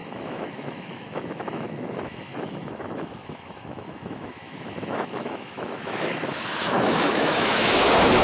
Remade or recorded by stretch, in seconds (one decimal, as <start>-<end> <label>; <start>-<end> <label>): 0.0-8.2 remade